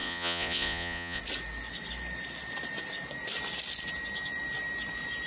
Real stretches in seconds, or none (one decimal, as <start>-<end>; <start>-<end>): 1.2-5.3